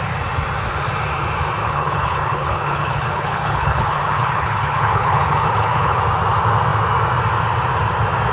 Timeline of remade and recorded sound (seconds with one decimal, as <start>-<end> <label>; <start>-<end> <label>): 0.0-1.6 recorded; 1.6-6.0 remade; 6.0-8.3 recorded